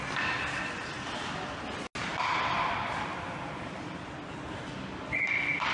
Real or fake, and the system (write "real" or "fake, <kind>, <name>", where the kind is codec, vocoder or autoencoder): real